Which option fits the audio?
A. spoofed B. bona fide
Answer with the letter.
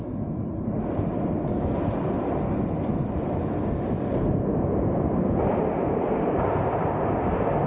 B